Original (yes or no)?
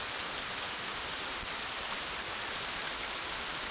yes